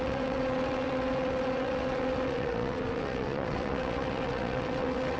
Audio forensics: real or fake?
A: fake